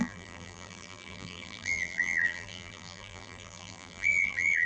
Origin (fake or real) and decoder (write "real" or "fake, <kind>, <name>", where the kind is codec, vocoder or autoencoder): fake, vocoder, BigVGAN v2